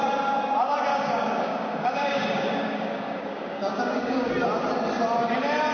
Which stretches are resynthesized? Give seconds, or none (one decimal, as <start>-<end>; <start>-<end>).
0.9-4.3